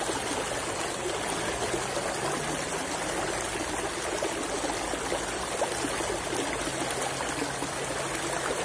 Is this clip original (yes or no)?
yes